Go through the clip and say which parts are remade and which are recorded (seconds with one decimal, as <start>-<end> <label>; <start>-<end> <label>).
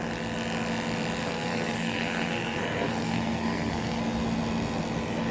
0.0-1.2 recorded; 1.2-4.0 remade; 4.0-5.3 recorded